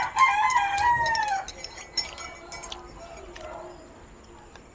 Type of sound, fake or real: real